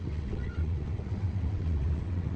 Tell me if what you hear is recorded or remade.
remade